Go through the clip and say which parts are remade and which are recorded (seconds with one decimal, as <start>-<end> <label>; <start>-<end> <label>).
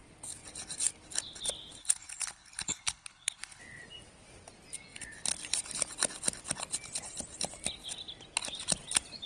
0.0-1.8 recorded; 1.8-3.6 remade; 3.6-9.3 recorded